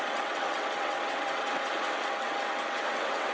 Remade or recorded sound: remade